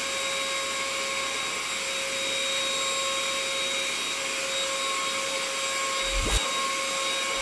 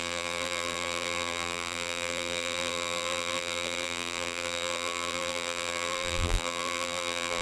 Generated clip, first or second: second